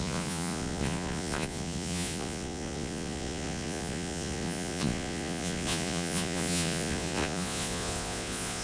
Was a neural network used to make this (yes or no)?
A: yes